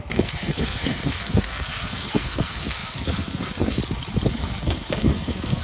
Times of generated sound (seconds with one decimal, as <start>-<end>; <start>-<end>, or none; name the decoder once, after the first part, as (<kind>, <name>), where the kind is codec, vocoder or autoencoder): 0.0-3.8 (codec, SNAC); 4.3-5.6